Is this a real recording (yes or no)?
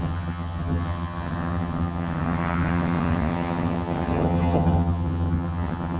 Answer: no